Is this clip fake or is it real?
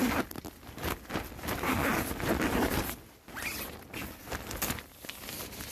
real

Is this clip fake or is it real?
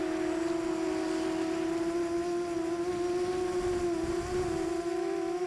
real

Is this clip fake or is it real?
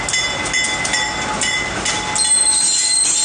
real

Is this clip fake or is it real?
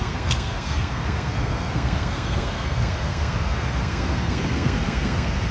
fake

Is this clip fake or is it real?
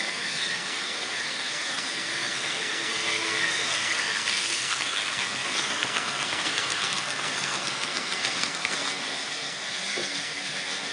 fake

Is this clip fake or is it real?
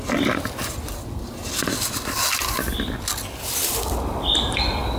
real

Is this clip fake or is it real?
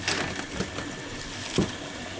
real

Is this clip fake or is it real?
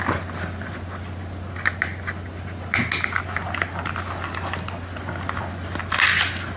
real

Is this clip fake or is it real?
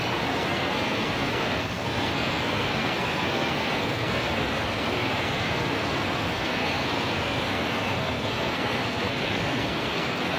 fake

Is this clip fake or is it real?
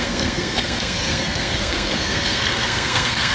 fake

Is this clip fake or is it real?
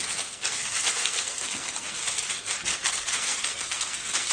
fake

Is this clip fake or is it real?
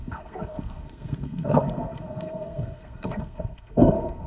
fake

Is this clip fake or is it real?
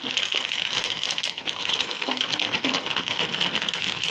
fake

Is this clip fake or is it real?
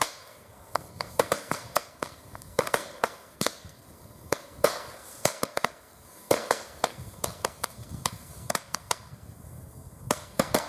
fake